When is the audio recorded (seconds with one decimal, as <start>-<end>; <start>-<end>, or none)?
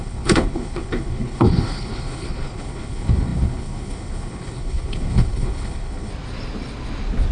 6.1-7.3